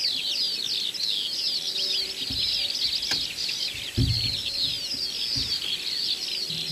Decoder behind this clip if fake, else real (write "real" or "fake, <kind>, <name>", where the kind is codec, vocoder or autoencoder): real